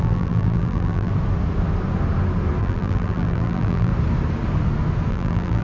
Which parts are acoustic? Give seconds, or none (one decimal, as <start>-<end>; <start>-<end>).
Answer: 1.1-2.6; 3.9-5.1